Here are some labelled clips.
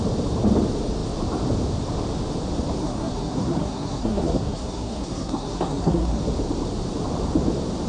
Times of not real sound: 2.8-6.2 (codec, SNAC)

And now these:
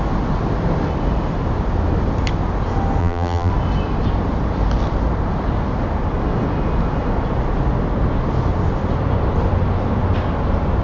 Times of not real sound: 3.0-3.5 (vocoder, BigVGAN v2)

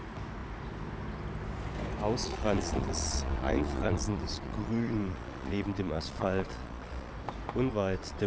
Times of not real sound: 2.2-7.1 (vocoder, Vocos); 7.7-8.3

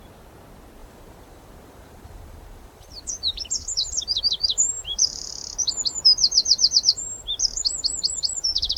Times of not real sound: 0.8-4.2 (vocoder, BigVGAN v2); 4.7-5.3

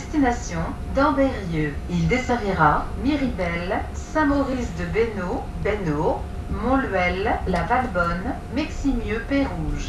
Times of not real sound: 1.6-2.3 (autoencoder, DAC-VAE)